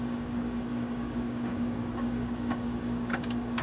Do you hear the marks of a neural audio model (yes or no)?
yes